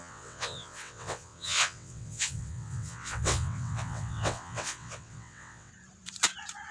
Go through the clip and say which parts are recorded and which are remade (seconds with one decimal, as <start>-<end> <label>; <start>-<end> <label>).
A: 0.0-5.7 remade; 5.7-6.7 recorded